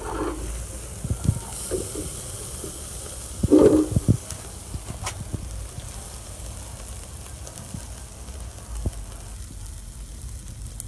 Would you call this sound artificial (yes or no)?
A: no